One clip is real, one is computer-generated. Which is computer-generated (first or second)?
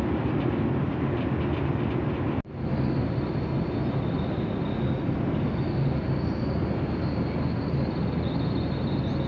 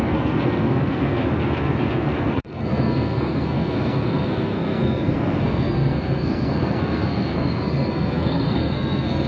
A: second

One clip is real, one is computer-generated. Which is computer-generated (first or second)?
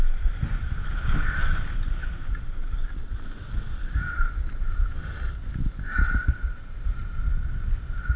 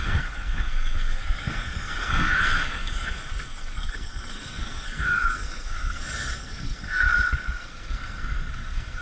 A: second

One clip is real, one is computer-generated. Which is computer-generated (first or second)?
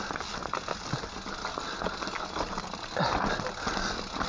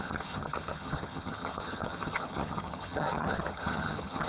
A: second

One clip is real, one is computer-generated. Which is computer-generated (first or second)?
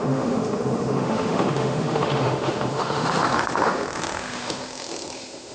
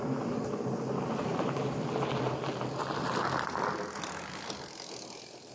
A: first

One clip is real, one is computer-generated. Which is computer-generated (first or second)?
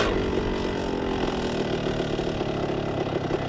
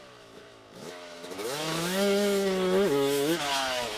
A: second